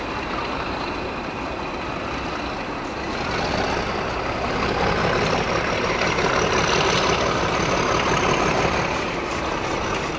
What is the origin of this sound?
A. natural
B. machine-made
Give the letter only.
A